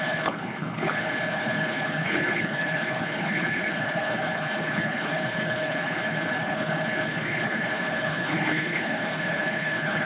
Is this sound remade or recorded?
remade